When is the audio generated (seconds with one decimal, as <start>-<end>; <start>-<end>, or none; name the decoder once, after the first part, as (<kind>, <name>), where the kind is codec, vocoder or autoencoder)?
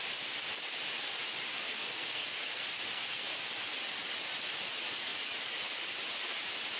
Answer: 1.5-3.5 (codec, SNAC)